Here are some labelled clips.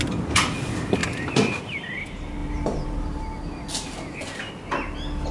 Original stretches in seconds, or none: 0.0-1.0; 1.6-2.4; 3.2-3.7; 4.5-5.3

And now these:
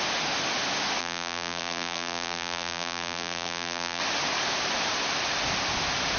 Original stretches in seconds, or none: 0.0-1.0; 4.0-6.2